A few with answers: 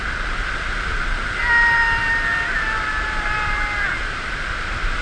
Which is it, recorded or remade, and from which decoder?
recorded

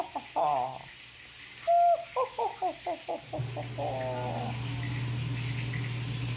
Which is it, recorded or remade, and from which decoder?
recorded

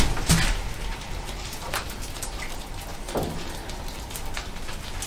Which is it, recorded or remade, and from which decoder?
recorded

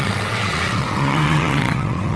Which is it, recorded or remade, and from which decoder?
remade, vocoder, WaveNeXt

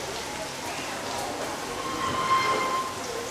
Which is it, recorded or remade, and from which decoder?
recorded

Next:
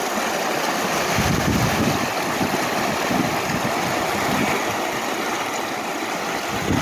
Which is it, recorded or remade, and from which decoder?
recorded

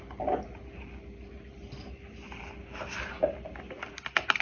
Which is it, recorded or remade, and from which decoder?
recorded